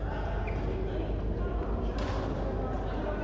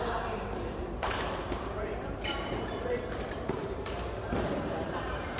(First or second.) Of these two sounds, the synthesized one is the second